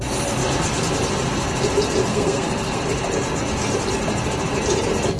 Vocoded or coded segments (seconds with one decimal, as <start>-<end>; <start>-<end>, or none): 2.1-2.8